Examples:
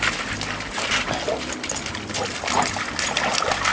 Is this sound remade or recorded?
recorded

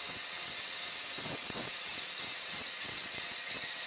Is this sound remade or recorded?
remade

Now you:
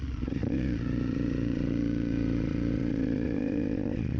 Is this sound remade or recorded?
remade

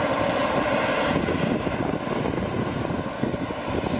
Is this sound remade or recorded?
recorded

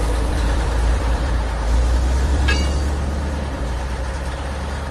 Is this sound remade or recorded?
remade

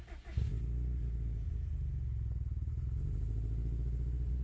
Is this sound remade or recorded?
recorded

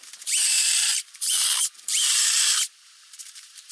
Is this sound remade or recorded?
remade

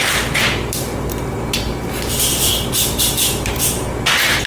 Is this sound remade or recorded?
recorded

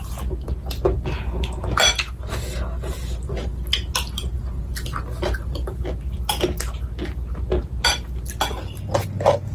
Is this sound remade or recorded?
recorded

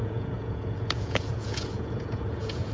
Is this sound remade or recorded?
remade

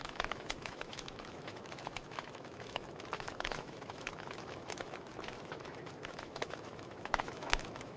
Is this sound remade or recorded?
remade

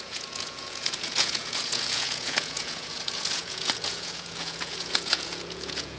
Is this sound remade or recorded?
remade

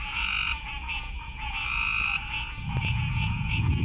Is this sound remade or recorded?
remade